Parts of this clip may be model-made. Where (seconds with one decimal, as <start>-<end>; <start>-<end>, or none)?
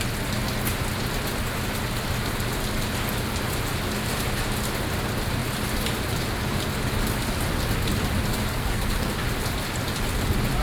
8.5-9.1